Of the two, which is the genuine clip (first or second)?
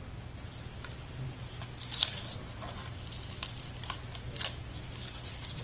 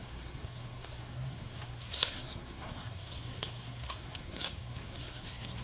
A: first